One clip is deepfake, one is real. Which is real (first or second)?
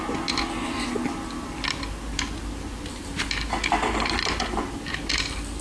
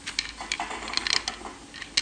second